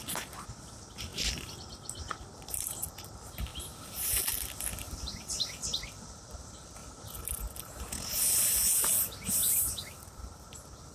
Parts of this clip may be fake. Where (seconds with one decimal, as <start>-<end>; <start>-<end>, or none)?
0.0-6.8; 9.3-10.9